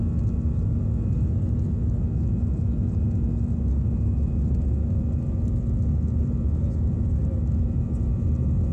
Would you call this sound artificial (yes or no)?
no